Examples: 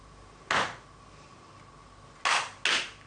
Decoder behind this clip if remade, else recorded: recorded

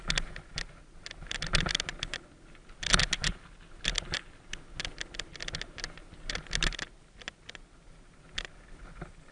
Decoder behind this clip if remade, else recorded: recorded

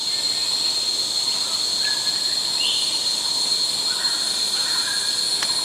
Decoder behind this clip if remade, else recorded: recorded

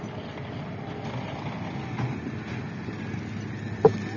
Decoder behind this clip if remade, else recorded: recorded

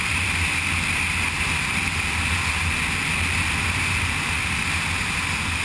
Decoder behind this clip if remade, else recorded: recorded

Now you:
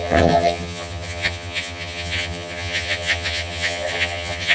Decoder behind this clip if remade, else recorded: remade, vocoder, HiFi-GAN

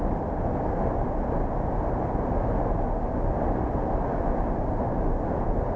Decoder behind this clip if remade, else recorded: recorded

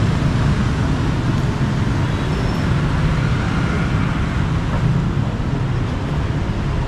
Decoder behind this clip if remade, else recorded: recorded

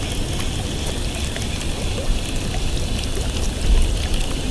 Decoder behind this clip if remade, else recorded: recorded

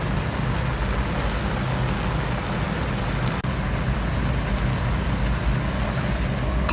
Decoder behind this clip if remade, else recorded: recorded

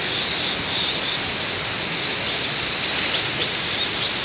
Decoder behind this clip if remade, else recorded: recorded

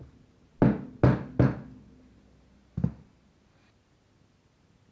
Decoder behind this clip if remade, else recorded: recorded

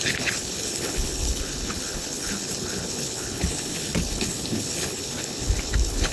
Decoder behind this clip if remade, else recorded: remade, codec, HILCodec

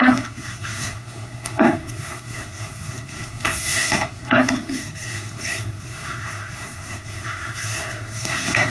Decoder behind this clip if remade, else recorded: remade, codec, SNAC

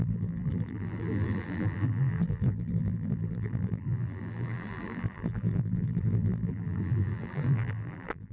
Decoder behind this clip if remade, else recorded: remade, vocoder, BigVGAN v2